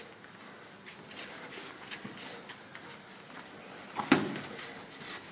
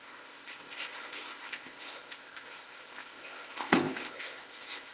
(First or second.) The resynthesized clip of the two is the second